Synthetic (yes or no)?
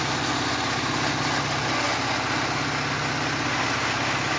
no